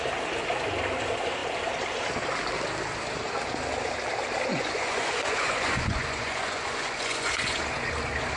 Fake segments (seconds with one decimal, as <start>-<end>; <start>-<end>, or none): 4.5-7.6